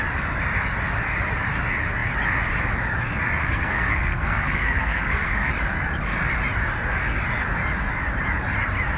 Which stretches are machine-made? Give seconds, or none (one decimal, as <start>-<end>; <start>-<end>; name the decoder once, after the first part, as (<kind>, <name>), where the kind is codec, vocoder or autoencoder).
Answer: 3.4-5.5 (codec, SNAC)